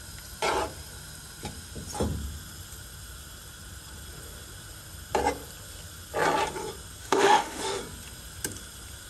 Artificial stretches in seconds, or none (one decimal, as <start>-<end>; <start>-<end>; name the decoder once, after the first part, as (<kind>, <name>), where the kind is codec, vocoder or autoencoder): 7.0-7.8 (autoencoder, DAC-VAE)